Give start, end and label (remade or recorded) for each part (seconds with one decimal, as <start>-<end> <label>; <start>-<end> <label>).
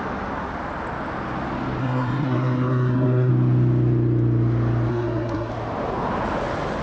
0.0-1.8 recorded; 1.8-3.3 remade; 3.3-4.9 recorded; 4.9-5.5 remade; 5.5-6.8 recorded